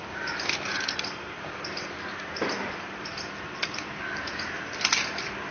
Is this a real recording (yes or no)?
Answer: yes